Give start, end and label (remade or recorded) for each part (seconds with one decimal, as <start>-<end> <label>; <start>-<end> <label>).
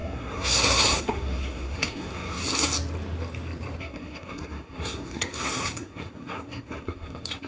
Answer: 0.0-2.4 remade; 2.4-3.8 recorded; 3.8-7.5 remade